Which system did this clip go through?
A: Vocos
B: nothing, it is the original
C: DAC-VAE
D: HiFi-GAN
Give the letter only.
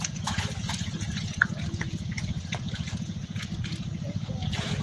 A